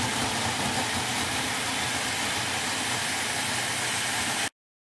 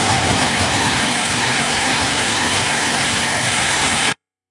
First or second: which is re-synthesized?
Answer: second